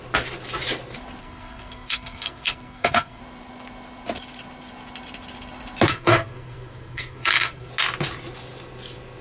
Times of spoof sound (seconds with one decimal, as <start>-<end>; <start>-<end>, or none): 1.2-3.2; 5.9-7.7